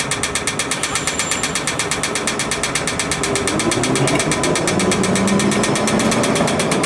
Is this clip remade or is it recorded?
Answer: recorded